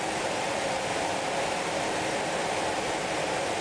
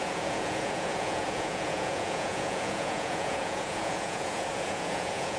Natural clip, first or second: first